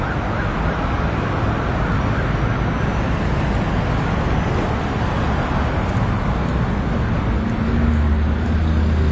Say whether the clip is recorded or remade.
recorded